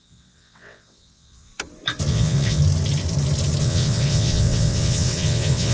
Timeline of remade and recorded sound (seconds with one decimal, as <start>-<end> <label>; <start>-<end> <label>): 0.0-1.5 remade; 1.5-2.1 recorded; 2.1-2.6 remade; 2.6-3.6 recorded; 3.6-5.7 remade